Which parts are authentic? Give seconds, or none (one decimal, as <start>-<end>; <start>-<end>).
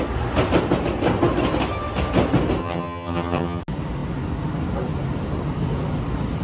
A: 0.0-2.6; 3.6-6.4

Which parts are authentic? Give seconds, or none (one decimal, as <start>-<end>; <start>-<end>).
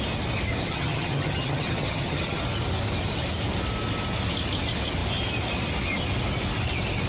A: 0.0-0.6; 2.4-7.1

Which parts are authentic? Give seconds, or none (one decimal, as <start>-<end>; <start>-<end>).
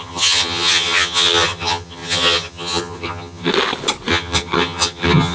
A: 3.5-4.1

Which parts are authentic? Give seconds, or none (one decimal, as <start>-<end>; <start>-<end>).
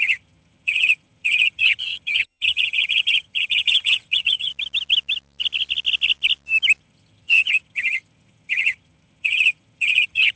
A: 4.5-6.8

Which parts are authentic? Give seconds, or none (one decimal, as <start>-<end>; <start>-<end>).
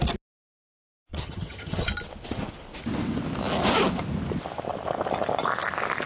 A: 0.0-1.1; 1.9-6.0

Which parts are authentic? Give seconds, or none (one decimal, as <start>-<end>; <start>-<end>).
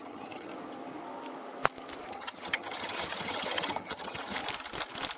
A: 0.5-2.1; 4.4-5.2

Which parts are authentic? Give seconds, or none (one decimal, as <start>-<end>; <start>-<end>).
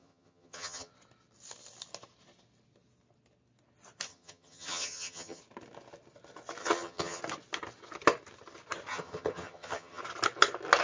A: 0.9-4.1; 5.4-6.6; 7.2-8.9; 10.0-10.8